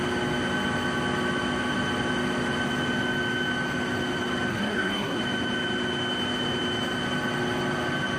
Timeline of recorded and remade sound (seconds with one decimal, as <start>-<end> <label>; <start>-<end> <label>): 0.0-4.5 recorded; 4.5-5.2 remade; 5.2-8.2 recorded